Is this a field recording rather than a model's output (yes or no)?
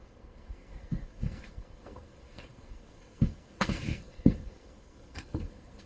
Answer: no